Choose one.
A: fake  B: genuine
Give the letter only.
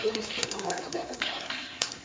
A